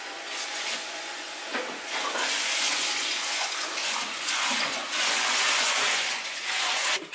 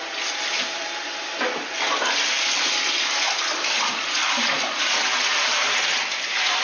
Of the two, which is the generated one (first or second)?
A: first